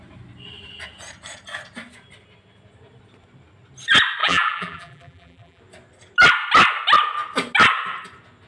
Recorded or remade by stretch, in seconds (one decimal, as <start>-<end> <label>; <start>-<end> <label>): 0.0-4.2 recorded; 4.2-5.6 remade; 5.6-8.5 recorded